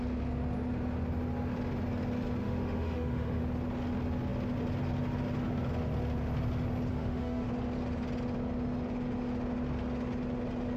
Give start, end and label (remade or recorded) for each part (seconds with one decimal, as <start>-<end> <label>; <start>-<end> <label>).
0.0-2.4 recorded; 2.4-3.4 remade; 3.4-6.9 recorded; 6.9-7.5 remade; 7.5-10.8 recorded